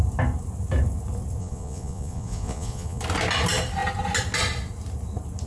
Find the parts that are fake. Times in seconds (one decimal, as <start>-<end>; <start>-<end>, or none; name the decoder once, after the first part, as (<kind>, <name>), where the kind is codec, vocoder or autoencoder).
1.4-3.0 (vocoder, Vocos)